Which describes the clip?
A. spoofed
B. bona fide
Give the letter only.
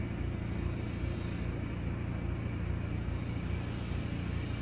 B